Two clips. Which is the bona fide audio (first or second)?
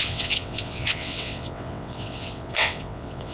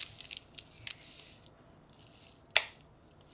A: second